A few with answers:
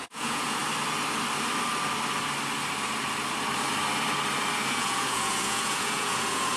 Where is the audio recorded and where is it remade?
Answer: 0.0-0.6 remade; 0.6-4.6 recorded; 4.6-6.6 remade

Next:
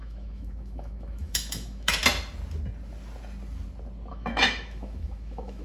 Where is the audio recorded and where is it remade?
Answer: 0.0-2.0 remade; 2.0-4.1 recorded; 4.1-5.6 remade